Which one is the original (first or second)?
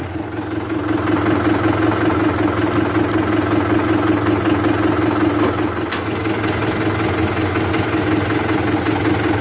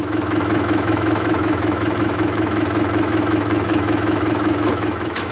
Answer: first